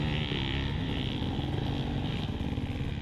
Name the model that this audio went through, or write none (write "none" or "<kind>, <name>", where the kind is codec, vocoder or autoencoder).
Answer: none